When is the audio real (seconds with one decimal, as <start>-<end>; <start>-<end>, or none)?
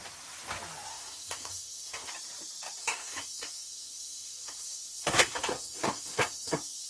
0.0-0.9; 2.1-2.8